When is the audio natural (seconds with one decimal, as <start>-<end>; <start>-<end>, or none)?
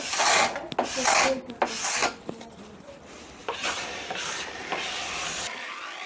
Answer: 0.0-3.4; 4.6-6.1